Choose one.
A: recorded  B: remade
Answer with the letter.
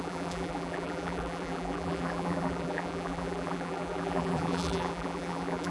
B